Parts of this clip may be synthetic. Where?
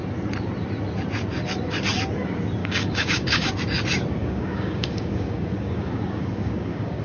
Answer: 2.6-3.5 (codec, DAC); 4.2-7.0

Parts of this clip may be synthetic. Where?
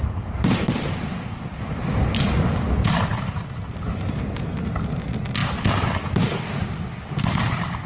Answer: none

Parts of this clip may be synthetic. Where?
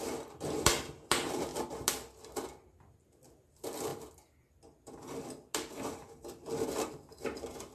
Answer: none